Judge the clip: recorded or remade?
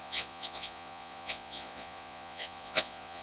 remade